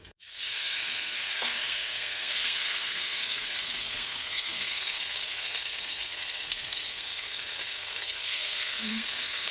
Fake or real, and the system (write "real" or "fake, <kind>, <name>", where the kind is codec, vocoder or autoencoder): fake, codec, SNAC